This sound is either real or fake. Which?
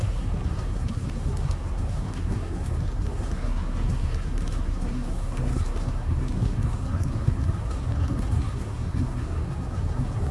fake